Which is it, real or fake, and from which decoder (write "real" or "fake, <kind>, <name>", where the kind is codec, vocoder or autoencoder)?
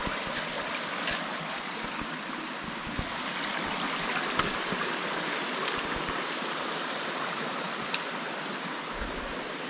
real